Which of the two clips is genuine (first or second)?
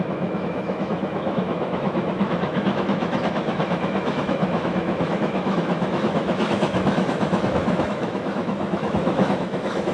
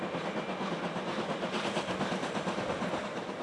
second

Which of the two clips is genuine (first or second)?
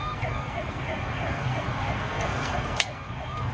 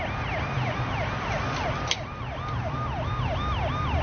second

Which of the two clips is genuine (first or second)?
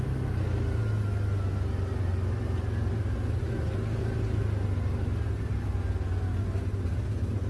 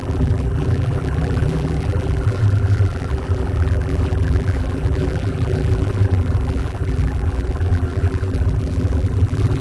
first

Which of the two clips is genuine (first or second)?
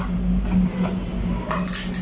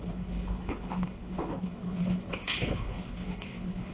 first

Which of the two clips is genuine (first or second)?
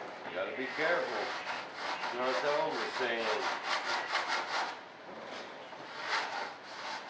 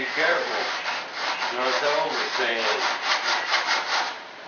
first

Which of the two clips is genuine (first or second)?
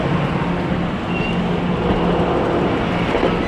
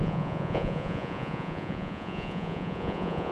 first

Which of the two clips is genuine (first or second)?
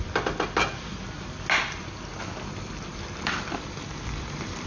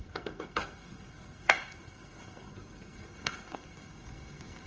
first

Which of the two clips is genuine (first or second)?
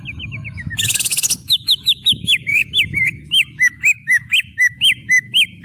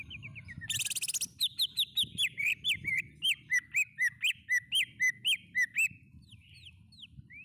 second